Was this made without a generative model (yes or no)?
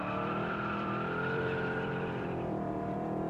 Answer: no